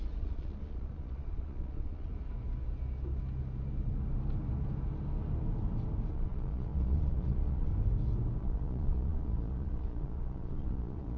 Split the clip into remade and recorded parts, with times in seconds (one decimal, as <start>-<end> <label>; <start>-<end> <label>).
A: 0.0-2.1 remade; 2.1-6.1 recorded; 6.1-7.7 remade; 7.7-8.4 recorded; 8.4-11.2 remade